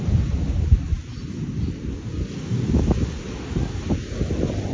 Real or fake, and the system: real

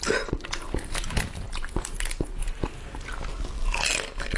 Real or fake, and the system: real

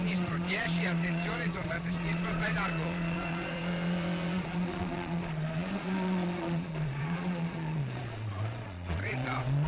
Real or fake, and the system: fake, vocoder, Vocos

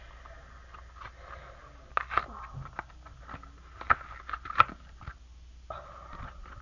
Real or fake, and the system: real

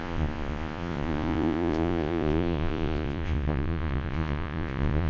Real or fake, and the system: fake, vocoder, Vocos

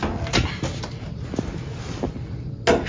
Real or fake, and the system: real